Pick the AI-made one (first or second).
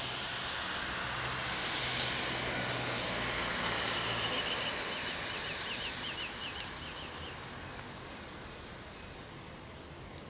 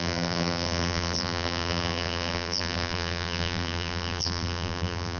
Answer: second